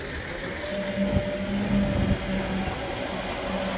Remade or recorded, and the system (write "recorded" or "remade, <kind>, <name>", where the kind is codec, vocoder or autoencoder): recorded